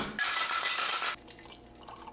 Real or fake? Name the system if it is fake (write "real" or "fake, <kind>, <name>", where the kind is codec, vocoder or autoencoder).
real